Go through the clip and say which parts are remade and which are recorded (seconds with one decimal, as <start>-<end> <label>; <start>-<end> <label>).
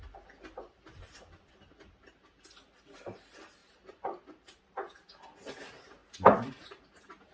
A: 0.0-3.6 recorded; 3.6-4.6 remade; 4.6-6.0 recorded; 6.0-6.8 remade; 6.8-7.3 recorded